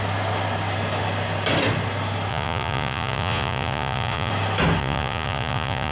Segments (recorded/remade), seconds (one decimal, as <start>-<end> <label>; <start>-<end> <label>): 0.0-2.3 recorded; 2.3-4.3 remade; 4.3-4.8 recorded; 4.8-5.9 remade